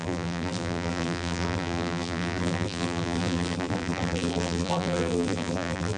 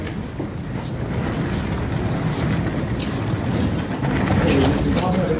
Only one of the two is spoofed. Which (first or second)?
first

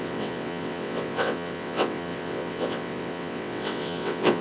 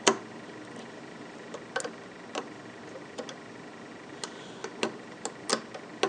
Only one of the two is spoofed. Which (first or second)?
first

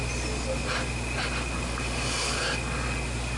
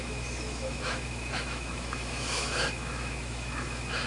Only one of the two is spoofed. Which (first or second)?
second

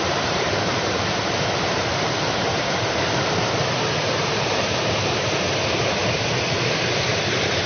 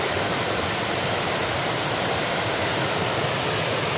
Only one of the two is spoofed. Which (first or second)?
first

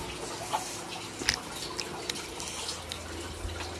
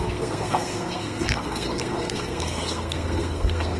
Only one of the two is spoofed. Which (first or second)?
second